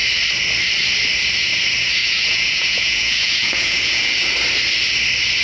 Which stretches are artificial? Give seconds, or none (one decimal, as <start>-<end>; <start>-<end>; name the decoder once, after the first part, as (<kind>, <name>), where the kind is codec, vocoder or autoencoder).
2.0-4.1 (vocoder, Vocos)